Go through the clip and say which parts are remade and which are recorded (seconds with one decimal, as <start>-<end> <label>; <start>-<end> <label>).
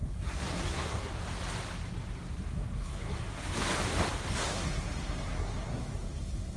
0.0-1.1 remade; 1.1-2.4 recorded; 2.4-3.5 remade; 3.5-4.4 recorded; 4.4-6.6 remade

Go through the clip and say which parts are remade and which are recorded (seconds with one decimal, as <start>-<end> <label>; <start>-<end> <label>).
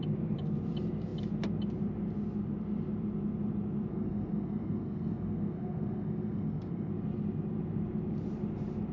0.0-3.9 recorded; 3.9-6.9 remade; 6.9-8.9 recorded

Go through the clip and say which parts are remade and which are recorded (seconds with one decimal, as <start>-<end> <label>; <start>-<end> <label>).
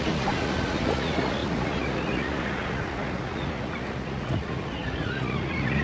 0.0-5.8 remade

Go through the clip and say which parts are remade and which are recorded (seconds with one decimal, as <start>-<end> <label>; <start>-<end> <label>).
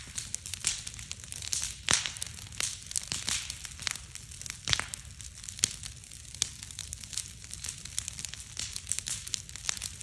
0.0-10.0 recorded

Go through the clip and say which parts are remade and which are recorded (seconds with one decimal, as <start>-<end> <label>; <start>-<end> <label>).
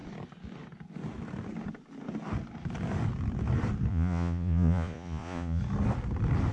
0.0-3.9 recorded; 3.9-5.6 remade; 5.6-6.5 recorded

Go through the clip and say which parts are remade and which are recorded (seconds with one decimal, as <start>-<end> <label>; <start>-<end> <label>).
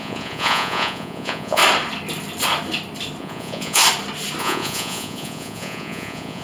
0.0-1.6 remade; 1.6-3.2 recorded; 3.2-3.8 remade; 3.8-4.4 recorded; 4.4-6.4 remade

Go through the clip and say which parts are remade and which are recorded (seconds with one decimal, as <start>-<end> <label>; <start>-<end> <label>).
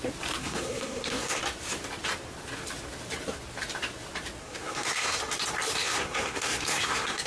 0.0-0.4 recorded; 0.4-1.4 remade; 1.4-4.4 recorded; 4.4-5.2 remade; 5.2-5.8 recorded; 5.8-7.3 remade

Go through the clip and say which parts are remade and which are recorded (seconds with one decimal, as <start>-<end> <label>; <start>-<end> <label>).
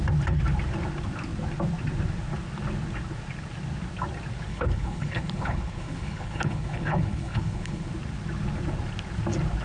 0.0-4.5 recorded; 4.5-7.9 remade; 7.9-9.6 recorded